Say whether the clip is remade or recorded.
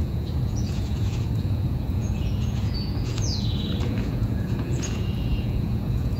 remade